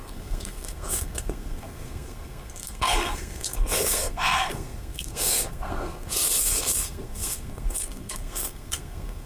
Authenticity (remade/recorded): remade